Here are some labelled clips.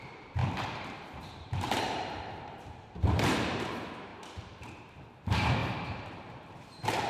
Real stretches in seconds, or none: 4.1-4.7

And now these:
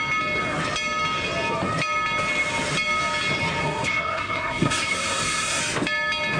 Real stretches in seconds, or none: 0.0-3.6; 5.6-6.4

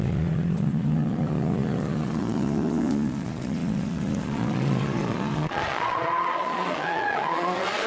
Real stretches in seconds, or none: none